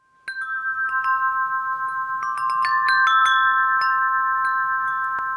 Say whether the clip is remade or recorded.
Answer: recorded